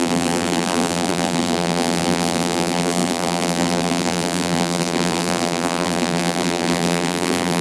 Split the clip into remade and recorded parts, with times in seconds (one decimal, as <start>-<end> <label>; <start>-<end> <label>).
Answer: 0.0-7.6 remade